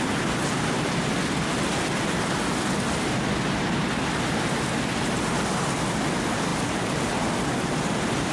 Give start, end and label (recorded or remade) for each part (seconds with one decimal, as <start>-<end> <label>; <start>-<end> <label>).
0.0-8.3 recorded